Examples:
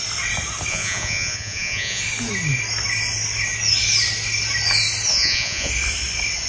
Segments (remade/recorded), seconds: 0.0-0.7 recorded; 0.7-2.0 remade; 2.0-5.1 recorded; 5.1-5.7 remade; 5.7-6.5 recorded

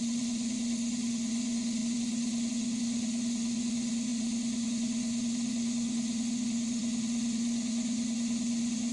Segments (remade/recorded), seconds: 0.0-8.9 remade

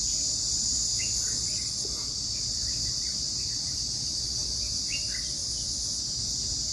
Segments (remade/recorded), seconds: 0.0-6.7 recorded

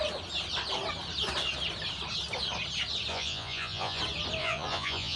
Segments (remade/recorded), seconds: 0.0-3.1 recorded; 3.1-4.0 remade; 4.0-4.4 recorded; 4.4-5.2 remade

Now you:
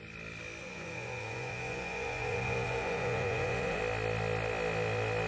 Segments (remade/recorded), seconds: 0.0-0.6 recorded; 0.6-3.8 remade; 3.8-5.3 recorded

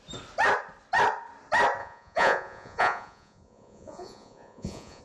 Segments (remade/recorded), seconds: 0.0-1.8 recorded; 1.8-5.0 remade

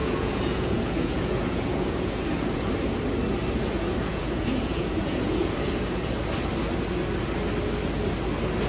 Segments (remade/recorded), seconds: 0.0-2.7 remade; 2.7-4.1 recorded; 4.1-6.1 remade; 6.1-8.7 recorded

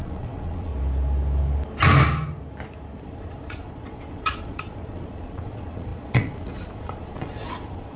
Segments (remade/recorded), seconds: 0.0-0.7 remade; 0.7-3.0 recorded; 3.0-8.0 remade